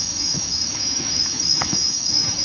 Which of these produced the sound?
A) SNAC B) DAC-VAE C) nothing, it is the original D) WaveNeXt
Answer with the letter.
B